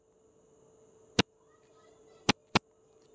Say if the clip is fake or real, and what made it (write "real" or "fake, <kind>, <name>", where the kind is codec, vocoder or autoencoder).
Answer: real